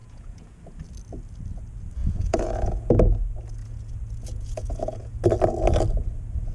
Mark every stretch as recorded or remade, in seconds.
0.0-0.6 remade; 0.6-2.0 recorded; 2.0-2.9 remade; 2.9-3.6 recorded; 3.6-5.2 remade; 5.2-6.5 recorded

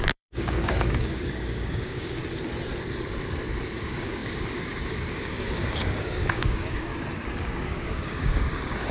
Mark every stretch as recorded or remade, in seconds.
0.0-2.2 remade; 2.2-3.6 recorded; 3.6-6.9 remade; 6.9-7.4 recorded; 7.4-8.9 remade